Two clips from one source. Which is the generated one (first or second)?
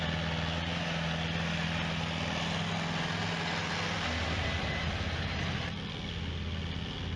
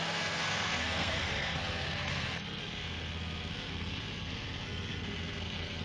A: second